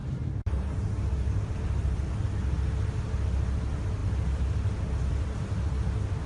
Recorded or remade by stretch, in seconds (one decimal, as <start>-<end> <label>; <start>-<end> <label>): 0.0-6.3 recorded